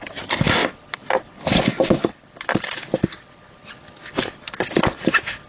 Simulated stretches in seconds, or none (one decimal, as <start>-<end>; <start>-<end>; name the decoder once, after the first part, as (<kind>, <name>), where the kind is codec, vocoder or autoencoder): none